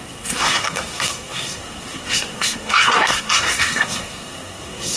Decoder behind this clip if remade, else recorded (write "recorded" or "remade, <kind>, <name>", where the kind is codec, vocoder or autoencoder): remade, codec, SNAC